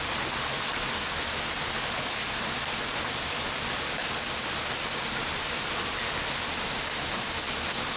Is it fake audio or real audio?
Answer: real